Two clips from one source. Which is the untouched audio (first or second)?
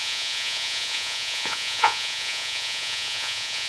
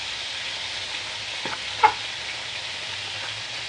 second